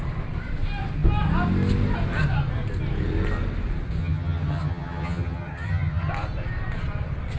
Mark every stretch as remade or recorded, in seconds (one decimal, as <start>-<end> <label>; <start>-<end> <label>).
0.0-4.0 recorded; 4.0-6.1 remade; 6.1-7.4 recorded

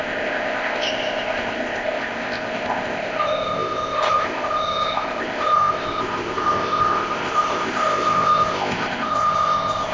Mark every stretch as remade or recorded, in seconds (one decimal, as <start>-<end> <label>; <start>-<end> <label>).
0.0-9.9 remade

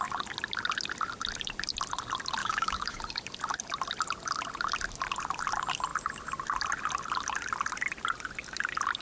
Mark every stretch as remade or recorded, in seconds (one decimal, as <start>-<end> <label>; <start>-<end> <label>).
0.0-2.4 recorded; 2.4-3.0 remade; 3.0-9.0 recorded

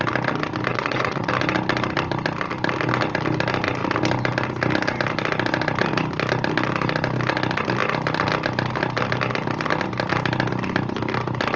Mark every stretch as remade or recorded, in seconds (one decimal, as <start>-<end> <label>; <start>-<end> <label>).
0.0-0.7 recorded; 0.7-1.3 remade; 1.3-11.6 recorded

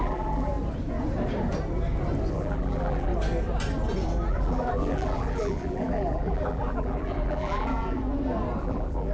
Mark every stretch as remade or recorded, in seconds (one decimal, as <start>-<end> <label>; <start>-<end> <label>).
0.0-0.5 remade; 0.5-2.3 recorded; 2.3-3.1 remade; 3.1-4.3 recorded; 4.3-8.0 remade; 8.0-8.6 recorded; 8.6-9.1 remade

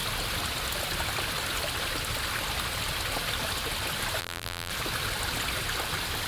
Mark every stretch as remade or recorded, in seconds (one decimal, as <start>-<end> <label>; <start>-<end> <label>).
0.0-4.2 recorded; 4.2-4.7 remade; 4.7-6.3 recorded